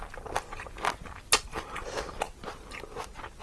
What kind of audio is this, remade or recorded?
recorded